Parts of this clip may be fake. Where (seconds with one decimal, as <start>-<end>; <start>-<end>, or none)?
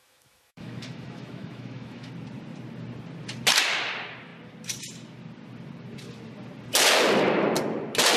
0.0-2.1